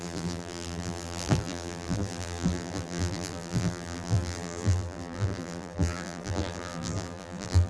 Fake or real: fake